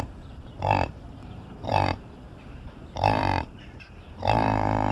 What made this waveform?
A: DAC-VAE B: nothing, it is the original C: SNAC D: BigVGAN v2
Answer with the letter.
D